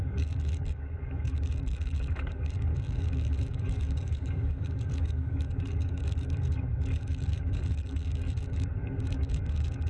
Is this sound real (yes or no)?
no